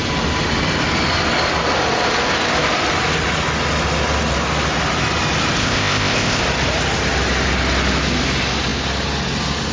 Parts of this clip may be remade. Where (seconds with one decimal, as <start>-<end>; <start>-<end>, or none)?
5.6-6.4